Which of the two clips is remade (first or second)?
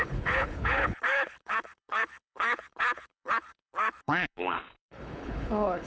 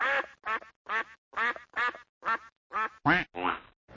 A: first